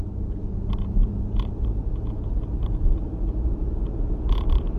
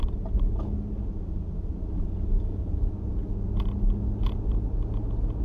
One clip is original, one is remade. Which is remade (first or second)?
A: first